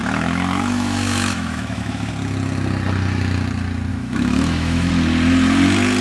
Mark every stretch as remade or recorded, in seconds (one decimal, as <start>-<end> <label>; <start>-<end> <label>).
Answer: 0.0-2.1 remade; 2.1-3.9 recorded; 3.9-4.9 remade; 4.9-6.0 recorded